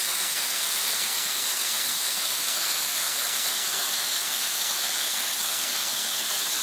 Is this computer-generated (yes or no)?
yes